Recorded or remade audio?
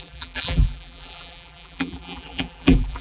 remade